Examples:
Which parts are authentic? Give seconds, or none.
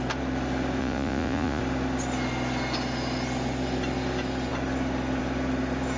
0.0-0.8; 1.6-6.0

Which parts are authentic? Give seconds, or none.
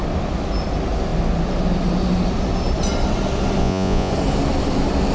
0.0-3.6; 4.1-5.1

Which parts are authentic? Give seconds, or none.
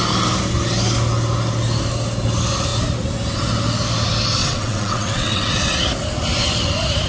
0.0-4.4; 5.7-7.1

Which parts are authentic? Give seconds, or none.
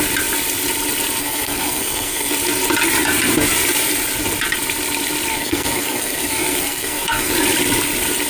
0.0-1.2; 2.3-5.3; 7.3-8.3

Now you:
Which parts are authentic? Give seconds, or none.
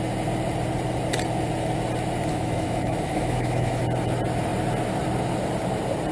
0.0-2.3; 3.8-6.1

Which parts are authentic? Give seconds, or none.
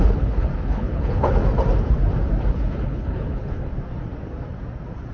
1.4-2.5; 3.7-5.1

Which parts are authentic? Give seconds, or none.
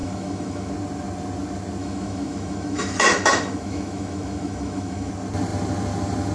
0.7-1.8; 5.1-6.3